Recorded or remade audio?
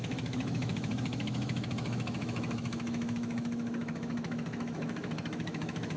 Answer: remade